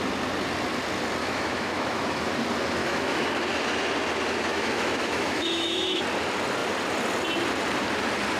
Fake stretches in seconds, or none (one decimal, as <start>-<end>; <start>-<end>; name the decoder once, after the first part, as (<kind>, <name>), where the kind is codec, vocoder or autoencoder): 1.2-2.3 (autoencoder, DAC-VAE); 2.8-3.4; 4.5-6.0